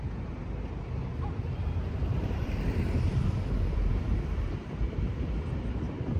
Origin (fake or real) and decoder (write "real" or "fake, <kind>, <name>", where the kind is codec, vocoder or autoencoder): fake, vocoder, BigVGAN v2